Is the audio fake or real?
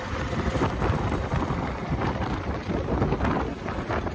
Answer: fake